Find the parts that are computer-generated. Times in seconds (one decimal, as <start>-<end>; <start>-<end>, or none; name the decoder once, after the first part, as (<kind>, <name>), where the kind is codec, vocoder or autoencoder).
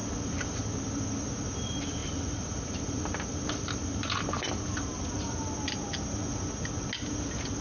0.0-0.6 (vocoder, BigVGAN v2); 2.0-5.3